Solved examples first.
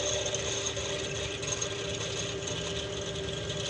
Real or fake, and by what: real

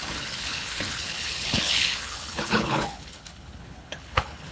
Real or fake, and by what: fake, codec, HILCodec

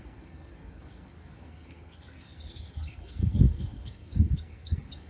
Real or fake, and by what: fake, codec, SNAC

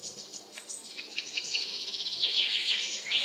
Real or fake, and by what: fake, codec, SNAC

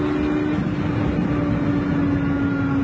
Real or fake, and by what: real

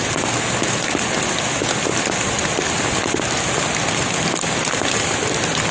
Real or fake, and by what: real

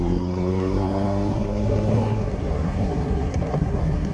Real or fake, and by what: fake, codec, SNAC